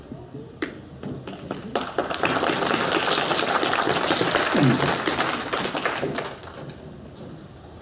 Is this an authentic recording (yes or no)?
yes